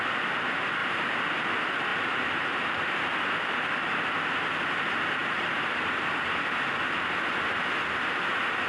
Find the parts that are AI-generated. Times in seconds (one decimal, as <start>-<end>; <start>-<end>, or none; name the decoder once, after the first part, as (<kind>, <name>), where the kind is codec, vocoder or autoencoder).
0.8-1.5 (vocoder, BigVGAN v2); 1.9-2.8; 5.2-6.1